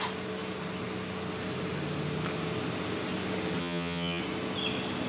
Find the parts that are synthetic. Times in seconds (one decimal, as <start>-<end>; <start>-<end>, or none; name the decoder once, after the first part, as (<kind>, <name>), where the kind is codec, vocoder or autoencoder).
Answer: 3.6-4.2 (vocoder, HiFi-GAN)